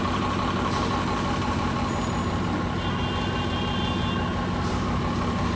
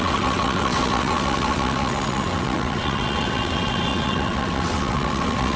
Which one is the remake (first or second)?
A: second